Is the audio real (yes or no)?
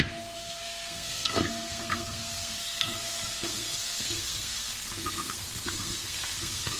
no